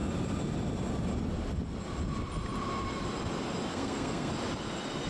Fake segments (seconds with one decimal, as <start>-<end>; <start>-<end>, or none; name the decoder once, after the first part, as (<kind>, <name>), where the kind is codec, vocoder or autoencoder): 3.7-4.3 (codec, SNAC)